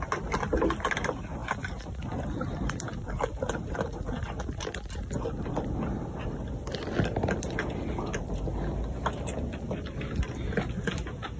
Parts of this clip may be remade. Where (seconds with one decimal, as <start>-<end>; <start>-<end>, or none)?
none